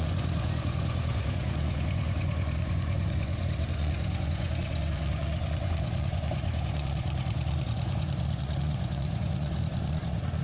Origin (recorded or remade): remade